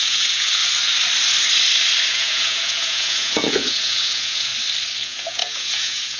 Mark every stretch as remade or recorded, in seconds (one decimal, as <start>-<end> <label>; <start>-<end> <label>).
0.0-0.6 remade; 0.6-2.1 recorded; 2.1-4.5 remade; 4.5-5.0 recorded; 5.0-6.2 remade